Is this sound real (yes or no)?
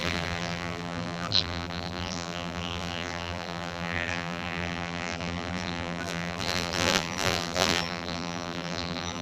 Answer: no